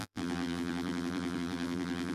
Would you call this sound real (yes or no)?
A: no